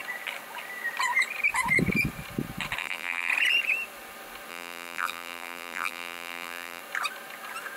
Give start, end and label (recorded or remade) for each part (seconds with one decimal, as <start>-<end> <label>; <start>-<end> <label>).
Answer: 0.0-2.8 recorded; 2.8-3.3 remade; 3.3-4.5 recorded; 4.5-6.8 remade; 6.8-7.8 recorded